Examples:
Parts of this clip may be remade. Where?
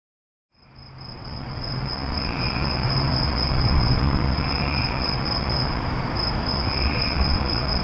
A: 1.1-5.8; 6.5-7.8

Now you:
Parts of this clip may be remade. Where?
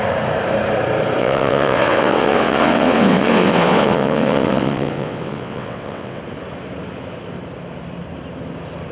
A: 1.2-6.2